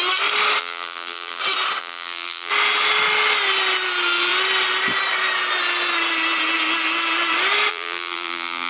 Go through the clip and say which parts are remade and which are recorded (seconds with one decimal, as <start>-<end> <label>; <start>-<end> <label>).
0.0-0.6 recorded; 0.6-1.4 remade; 1.4-1.8 recorded; 1.8-2.5 remade; 2.5-7.7 recorded; 7.7-8.7 remade